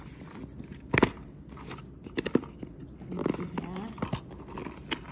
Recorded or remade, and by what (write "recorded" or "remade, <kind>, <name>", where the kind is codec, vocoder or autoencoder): recorded